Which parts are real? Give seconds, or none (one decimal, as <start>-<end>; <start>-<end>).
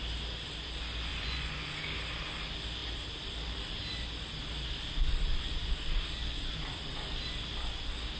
0.0-1.1; 1.7-8.2